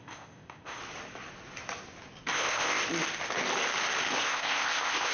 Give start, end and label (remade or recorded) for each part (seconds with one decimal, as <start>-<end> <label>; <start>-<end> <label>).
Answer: 0.0-0.8 remade; 0.8-2.3 recorded; 2.3-2.8 remade; 2.8-4.2 recorded; 4.2-5.1 remade